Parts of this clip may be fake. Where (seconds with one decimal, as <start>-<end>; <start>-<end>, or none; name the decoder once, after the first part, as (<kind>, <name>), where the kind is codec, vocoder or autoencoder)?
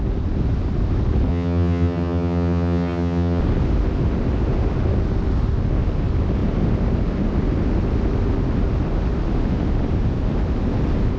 1.3-3.4 (vocoder, HiFi-GAN)